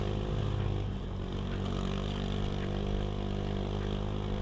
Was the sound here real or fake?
real